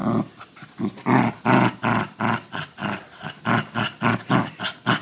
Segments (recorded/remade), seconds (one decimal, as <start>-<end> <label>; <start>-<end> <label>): 0.0-5.0 recorded